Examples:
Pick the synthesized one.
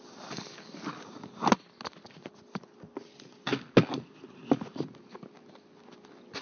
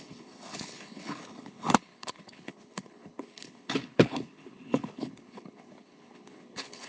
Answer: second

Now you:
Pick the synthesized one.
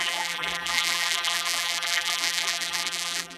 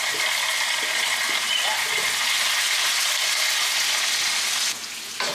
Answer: first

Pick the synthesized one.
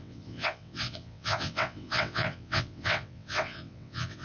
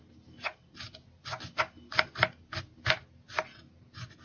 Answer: first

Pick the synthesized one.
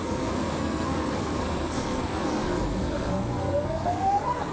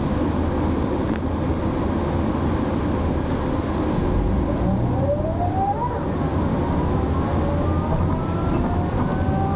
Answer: first